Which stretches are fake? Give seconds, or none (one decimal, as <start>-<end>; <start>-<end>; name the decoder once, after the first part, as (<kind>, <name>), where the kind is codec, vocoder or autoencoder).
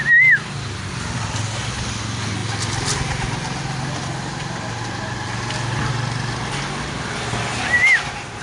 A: none